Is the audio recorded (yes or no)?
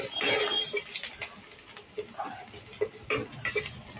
yes